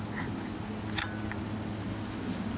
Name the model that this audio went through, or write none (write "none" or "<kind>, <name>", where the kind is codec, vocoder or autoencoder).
none